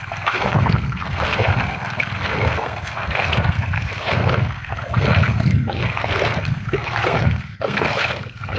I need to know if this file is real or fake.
fake